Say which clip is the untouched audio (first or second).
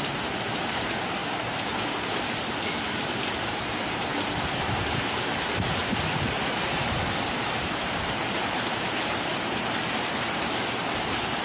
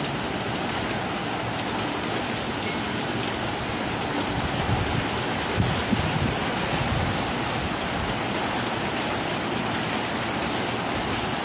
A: second